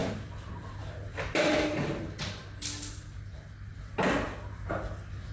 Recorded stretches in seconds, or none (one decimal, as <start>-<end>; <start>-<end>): 0.0-5.3

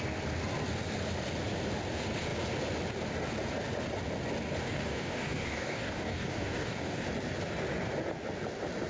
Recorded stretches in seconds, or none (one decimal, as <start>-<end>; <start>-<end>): 0.0-4.6; 7.0-8.9

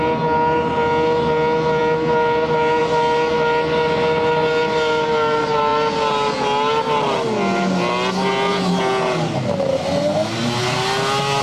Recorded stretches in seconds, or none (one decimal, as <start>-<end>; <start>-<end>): 0.0-11.4

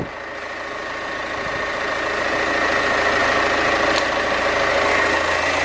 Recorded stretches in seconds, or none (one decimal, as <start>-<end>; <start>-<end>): 0.0-0.8; 1.6-5.6